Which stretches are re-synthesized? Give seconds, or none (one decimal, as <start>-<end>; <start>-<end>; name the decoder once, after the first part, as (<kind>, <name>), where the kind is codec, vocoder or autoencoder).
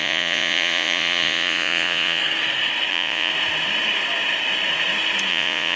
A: 0.0-2.2 (vocoder, Vocos); 2.9-3.3; 5.3-5.8